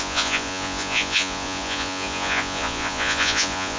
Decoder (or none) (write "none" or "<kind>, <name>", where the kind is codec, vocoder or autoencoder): vocoder, Vocos